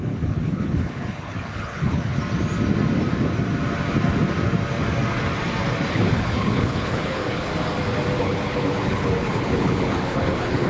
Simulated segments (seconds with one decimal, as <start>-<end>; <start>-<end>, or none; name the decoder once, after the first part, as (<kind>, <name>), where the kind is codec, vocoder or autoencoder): 0.0-2.2 (codec, HILCodec); 5.9-7.5; 8.2-10.7